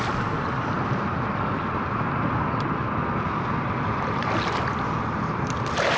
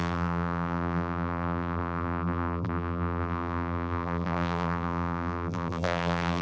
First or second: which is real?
first